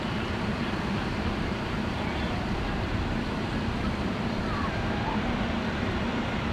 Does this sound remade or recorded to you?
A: remade